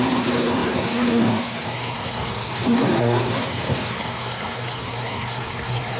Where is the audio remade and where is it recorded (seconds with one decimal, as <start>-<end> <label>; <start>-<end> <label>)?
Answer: 0.0-6.0 remade